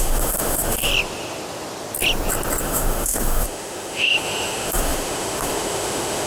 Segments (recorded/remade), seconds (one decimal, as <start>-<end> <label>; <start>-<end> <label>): 0.0-0.9 remade; 0.9-2.6 recorded; 2.6-6.3 remade